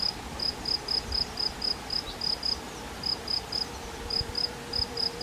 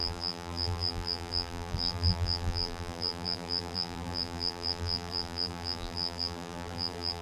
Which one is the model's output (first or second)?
second